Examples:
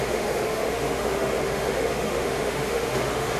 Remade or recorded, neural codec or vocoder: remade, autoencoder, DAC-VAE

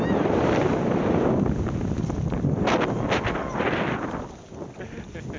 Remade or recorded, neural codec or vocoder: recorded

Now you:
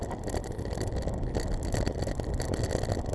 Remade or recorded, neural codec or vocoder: recorded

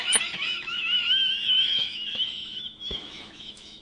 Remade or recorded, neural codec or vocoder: remade, autoencoder, DAC-VAE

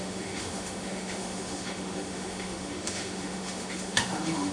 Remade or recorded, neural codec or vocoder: remade, autoencoder, DAC-VAE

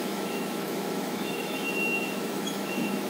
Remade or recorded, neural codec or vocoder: remade, autoencoder, DAC-VAE